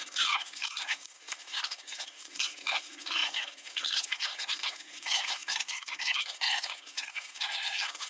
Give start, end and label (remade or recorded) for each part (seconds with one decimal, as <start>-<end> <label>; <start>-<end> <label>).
0.0-8.1 remade